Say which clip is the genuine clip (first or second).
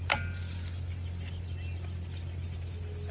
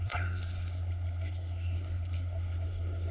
first